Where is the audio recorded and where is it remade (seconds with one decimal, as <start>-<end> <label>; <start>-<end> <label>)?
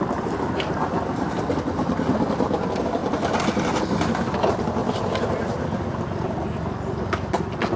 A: 0.0-7.8 recorded